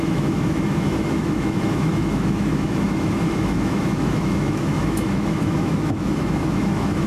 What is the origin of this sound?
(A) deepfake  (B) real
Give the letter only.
A